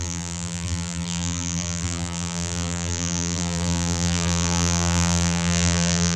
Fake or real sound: fake